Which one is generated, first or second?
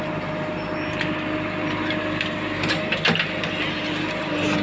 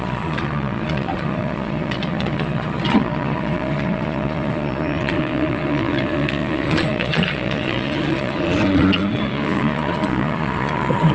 second